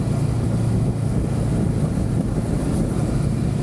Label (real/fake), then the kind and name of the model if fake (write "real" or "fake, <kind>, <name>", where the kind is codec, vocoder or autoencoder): real